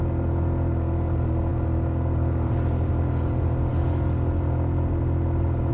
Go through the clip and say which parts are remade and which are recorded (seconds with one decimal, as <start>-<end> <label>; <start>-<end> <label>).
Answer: 0.0-5.7 recorded